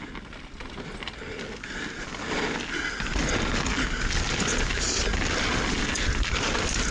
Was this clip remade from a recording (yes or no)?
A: no